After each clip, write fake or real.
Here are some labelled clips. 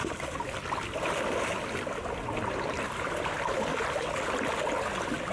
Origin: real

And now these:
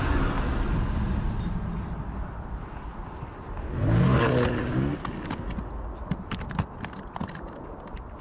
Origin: real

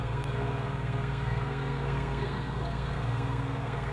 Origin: fake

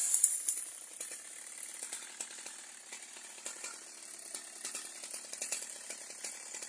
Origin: real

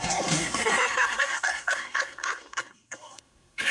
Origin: fake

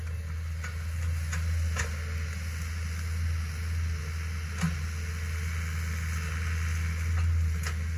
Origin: real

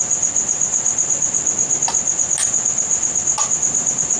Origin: real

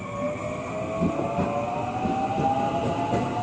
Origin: real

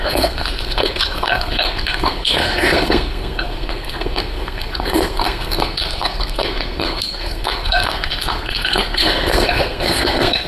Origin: fake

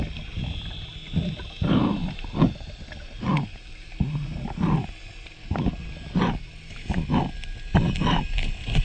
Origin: real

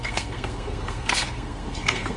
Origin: fake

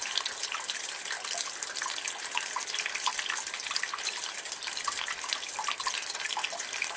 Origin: real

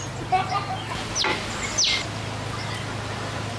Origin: real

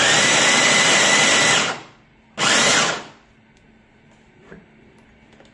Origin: real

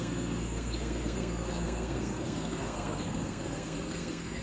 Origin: fake